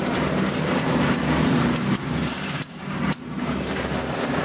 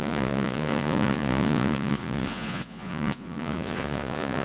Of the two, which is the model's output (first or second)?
second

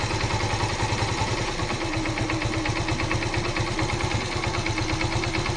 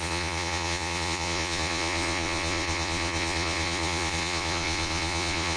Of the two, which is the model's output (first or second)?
second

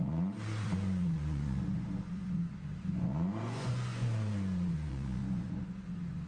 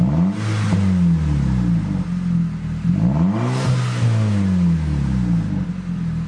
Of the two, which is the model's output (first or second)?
first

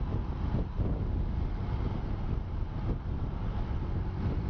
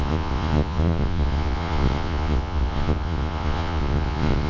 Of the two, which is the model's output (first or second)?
second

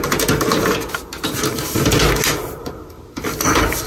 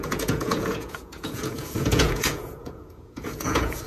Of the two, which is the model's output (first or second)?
second